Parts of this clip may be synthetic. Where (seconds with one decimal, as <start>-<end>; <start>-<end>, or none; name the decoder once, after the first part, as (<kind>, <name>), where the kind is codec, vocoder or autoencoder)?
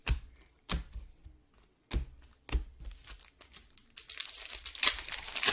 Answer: 0.0-0.7 (vocoder, BigVGAN v2)